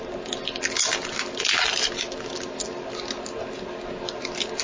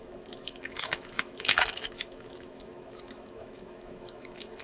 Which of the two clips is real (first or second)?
first